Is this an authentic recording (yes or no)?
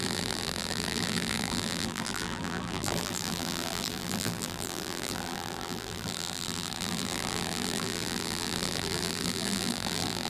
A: no